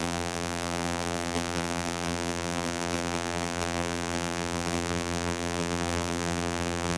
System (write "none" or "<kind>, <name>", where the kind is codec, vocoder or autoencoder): vocoder, BigVGAN v2